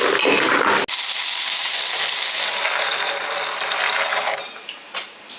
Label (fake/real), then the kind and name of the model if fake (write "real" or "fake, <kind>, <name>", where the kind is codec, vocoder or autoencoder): real